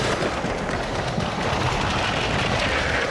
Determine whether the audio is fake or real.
real